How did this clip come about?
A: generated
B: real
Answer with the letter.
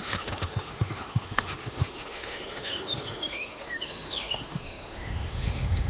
A